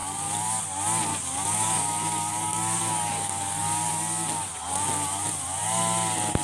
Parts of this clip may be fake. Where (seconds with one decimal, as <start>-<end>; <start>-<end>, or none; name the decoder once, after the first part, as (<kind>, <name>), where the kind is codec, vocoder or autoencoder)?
0.0-0.6 (codec, DAC); 1.1-3.9